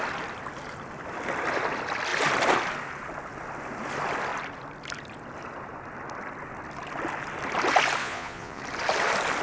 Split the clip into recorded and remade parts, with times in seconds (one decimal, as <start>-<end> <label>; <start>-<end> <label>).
0.0-8.0 recorded; 8.0-8.6 remade; 8.6-9.4 recorded